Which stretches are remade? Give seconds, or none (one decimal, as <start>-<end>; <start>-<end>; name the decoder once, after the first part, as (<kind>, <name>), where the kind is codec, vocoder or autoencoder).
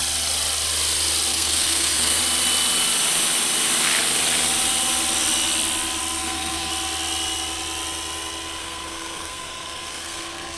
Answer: 1.3-2.2 (codec, SNAC); 6.2-6.7; 8.6-10.6